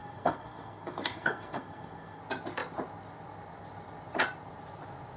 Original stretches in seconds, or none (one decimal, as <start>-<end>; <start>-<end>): 2.2-5.2